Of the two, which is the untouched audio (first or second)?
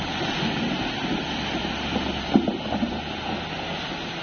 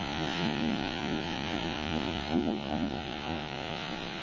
first